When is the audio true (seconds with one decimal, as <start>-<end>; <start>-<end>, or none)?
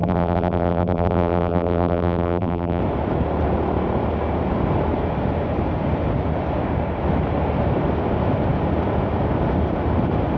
2.8-10.4